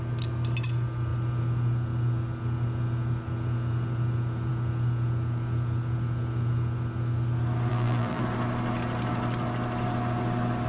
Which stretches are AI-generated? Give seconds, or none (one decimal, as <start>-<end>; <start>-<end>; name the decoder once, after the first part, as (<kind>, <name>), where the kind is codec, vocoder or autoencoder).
7.7-8.2 (vocoder, BigVGAN v2)